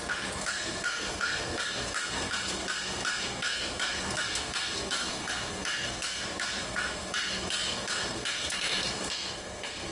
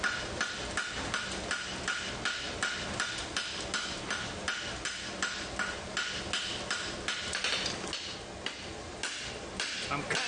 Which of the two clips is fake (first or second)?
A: first